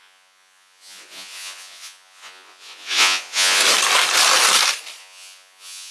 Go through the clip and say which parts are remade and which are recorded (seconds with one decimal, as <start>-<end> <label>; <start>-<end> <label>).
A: 0.0-3.6 remade; 3.6-5.0 recorded; 5.0-5.9 remade